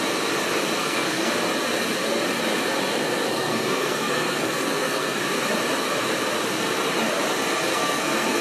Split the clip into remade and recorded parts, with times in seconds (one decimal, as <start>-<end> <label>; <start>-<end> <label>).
0.0-0.8 recorded; 0.8-1.3 remade; 1.3-3.3 recorded; 3.3-5.2 remade; 5.2-7.7 recorded; 7.7-8.4 remade